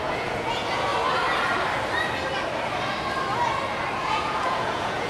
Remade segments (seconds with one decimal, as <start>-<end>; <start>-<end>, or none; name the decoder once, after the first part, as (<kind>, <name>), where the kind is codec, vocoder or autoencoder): 0.0-0.9 (vocoder, Vocos); 4.0-5.1